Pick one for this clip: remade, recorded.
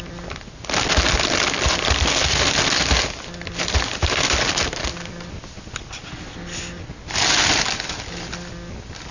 recorded